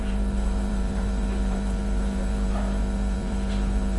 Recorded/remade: remade